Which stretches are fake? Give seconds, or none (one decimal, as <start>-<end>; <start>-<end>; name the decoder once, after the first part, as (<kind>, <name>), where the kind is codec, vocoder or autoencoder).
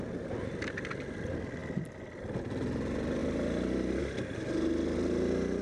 none